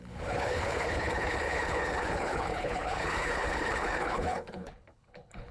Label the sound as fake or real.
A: fake